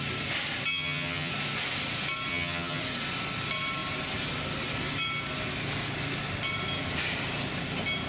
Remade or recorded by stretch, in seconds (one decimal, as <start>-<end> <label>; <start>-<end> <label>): 0.0-0.7 recorded; 0.7-1.3 remade; 1.3-2.3 recorded; 2.3-2.8 remade; 2.8-8.1 recorded